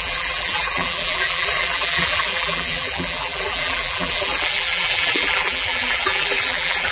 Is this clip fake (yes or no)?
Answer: yes